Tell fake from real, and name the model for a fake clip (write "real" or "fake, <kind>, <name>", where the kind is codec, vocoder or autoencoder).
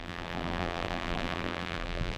fake, vocoder, BigVGAN v2